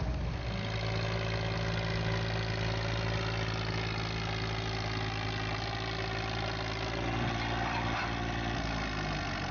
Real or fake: real